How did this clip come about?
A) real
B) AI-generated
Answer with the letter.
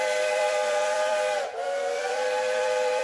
B